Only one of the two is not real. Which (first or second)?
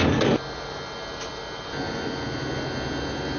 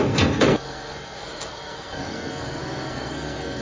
second